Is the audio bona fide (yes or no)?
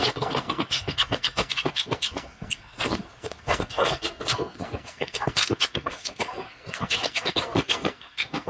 no